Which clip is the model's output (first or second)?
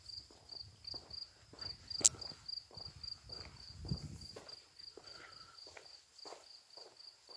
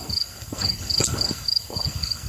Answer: second